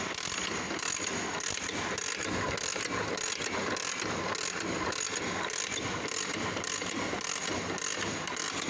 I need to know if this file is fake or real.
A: real